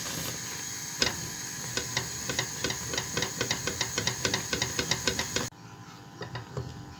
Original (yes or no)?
yes